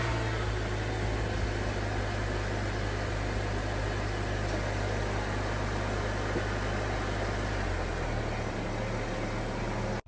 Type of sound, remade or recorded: recorded